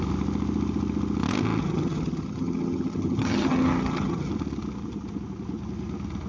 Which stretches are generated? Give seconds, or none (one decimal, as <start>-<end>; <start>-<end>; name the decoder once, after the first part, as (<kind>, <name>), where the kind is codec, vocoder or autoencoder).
1.6-4.3 (vocoder, HiFi-GAN)